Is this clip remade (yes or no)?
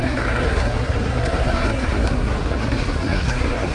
yes